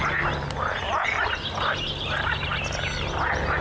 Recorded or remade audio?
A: recorded